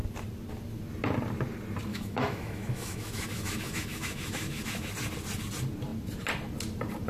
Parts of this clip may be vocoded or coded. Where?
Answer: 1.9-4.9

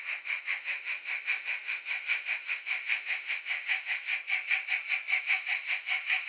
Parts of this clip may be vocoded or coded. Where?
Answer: 0.0-4.1; 5.2-6.3